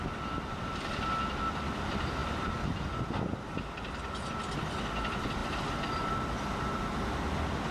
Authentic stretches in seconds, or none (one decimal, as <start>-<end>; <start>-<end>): 0.0-7.7